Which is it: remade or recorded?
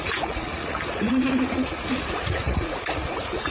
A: remade